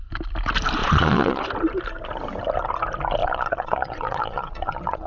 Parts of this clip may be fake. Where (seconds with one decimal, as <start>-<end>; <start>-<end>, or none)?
0.8-1.4; 3.2-5.1